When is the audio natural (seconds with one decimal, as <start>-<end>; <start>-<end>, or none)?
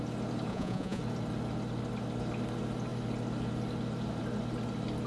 0.0-0.5; 1.0-5.1